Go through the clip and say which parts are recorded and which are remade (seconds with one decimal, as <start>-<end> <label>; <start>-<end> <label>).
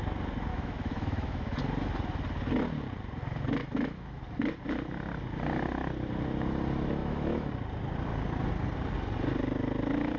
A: 0.0-0.5 recorded; 0.5-1.6 remade; 1.6-3.6 recorded; 3.6-4.2 remade; 4.2-7.0 recorded; 7.0-7.5 remade; 7.5-10.2 recorded